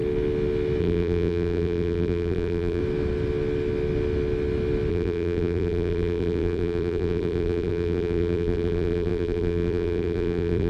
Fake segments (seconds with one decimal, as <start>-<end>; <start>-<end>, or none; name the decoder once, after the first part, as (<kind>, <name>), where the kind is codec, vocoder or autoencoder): 0.8-2.8 (vocoder, BigVGAN v2); 4.9-10.7